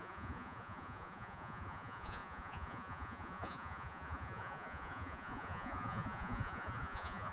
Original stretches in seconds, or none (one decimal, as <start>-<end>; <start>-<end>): none